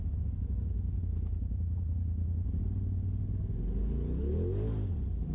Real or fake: real